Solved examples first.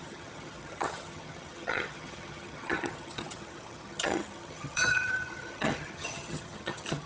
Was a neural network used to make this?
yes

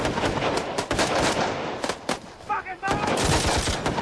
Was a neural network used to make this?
no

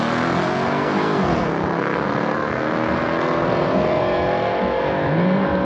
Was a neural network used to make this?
yes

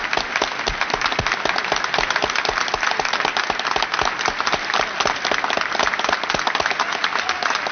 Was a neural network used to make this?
no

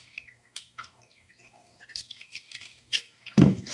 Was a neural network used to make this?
yes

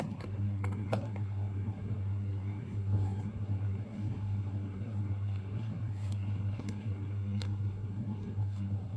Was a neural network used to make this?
yes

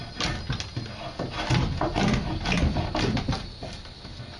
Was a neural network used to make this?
no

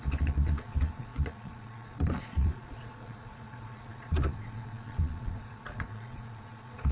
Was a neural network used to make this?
yes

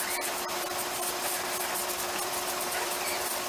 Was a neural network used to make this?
no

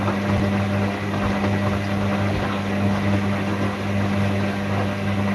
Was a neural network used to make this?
no